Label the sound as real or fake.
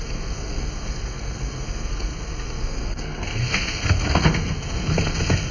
fake